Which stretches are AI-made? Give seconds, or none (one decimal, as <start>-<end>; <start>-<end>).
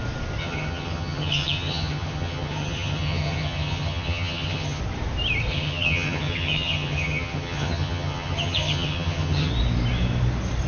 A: 0.4-4.8; 5.5-9.5